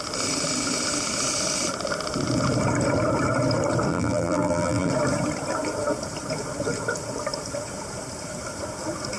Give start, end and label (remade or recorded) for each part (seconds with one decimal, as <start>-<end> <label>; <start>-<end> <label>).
0.0-3.9 recorded; 3.9-4.9 remade; 4.9-9.2 recorded